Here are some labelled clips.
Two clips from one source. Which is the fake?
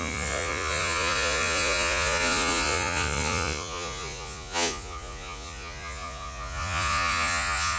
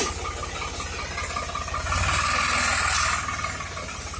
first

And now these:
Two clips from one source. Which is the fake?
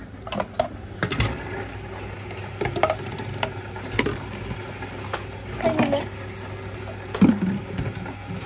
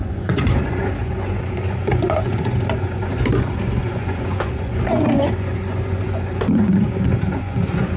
second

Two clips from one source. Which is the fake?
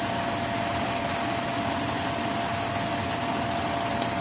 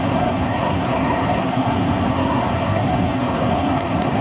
second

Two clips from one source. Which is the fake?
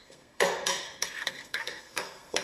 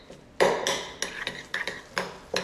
first